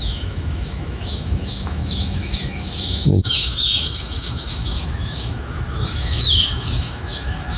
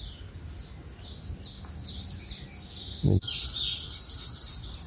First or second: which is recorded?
second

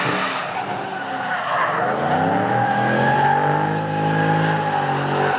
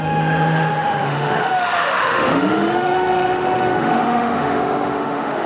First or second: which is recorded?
first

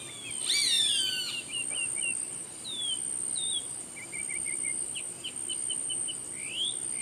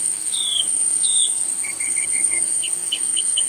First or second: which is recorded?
first